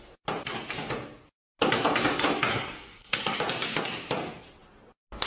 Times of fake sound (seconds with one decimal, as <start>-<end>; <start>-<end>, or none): 2.5-3.4